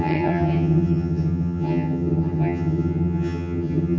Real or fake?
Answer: fake